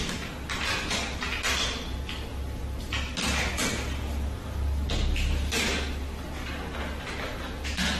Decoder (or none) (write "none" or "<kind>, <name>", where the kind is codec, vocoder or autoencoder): none